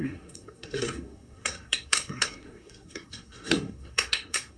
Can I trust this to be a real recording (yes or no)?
no